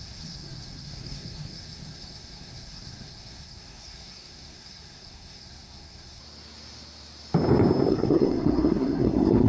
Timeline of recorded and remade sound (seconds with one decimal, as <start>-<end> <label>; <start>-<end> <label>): 0.0-6.2 remade; 6.2-7.9 recorded; 7.9-9.5 remade